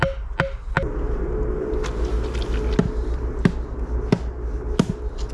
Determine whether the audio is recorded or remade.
recorded